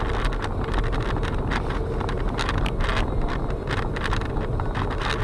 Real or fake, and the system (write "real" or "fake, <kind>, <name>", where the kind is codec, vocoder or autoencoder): real